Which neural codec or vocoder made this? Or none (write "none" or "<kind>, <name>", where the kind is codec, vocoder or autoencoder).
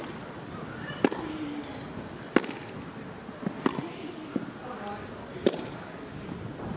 none